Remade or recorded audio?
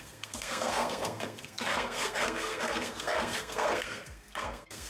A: remade